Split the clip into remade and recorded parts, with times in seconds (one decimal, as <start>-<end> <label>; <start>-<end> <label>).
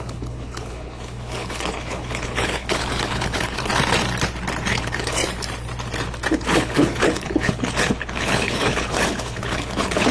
0.0-3.7 remade; 3.7-4.7 recorded; 4.7-5.2 remade; 5.2-6.3 recorded; 6.3-10.1 remade